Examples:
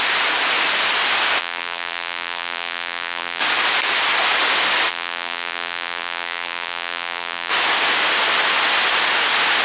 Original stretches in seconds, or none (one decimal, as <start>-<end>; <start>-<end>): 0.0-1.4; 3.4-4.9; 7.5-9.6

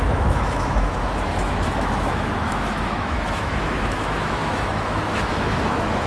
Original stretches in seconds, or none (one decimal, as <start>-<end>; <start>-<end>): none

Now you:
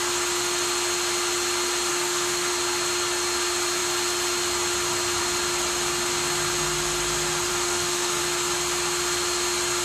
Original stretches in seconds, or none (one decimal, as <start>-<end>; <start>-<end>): 0.0-1.9; 2.5-7.5; 8.2-9.8

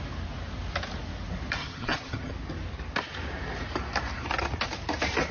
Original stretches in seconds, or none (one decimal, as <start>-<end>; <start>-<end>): 0.0-1.6; 2.3-5.3

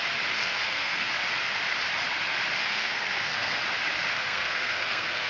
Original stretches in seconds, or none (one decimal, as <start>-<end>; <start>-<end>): 0.0-0.4; 1.1-2.6; 3.6-4.1

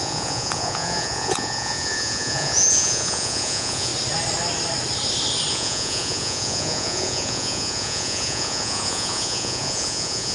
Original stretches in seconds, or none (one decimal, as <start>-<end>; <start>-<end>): 3.9-5.5